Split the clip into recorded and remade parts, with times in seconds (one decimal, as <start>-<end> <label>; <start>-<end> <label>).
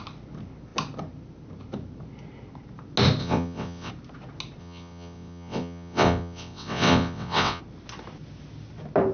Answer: 0.0-3.2 recorded; 3.2-3.9 remade; 3.9-4.6 recorded; 4.6-7.6 remade; 7.6-9.1 recorded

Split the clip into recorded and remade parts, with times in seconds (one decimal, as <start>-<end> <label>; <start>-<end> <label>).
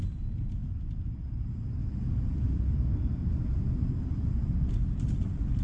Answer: 0.0-5.6 recorded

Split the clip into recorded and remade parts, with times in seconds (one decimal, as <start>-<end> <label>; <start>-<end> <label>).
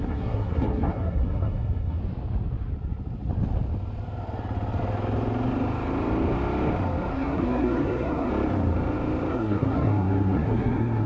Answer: 0.0-2.0 remade; 2.0-7.1 recorded; 7.1-8.3 remade; 8.3-9.3 recorded; 9.3-11.1 remade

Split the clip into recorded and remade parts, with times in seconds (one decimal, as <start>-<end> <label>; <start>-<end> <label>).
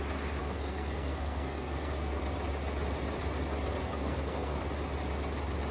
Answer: 0.0-0.4 recorded; 0.4-2.2 remade; 2.2-3.8 recorded; 3.8-4.6 remade; 4.6-5.7 recorded